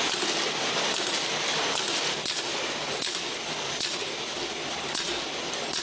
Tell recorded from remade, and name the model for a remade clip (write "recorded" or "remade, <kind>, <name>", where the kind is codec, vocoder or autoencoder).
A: recorded